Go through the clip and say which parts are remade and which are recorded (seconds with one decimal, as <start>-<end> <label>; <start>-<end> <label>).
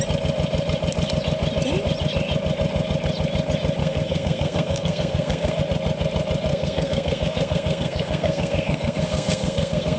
0.0-3.8 recorded; 3.8-5.6 remade; 5.6-6.5 recorded; 6.5-10.0 remade